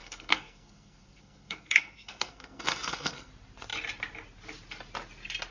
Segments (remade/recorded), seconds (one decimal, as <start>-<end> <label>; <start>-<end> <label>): 0.0-3.3 remade; 3.3-5.5 recorded